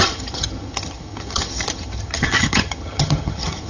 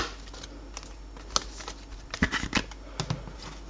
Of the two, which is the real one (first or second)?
second